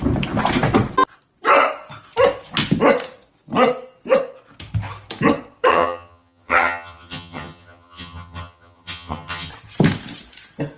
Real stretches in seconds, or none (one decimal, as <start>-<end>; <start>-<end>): 0.0-5.7; 9.5-10.8

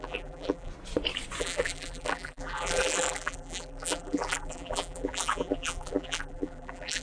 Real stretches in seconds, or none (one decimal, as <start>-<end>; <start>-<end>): 0.7-1.4